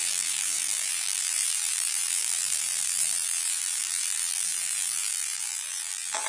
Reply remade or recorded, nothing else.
remade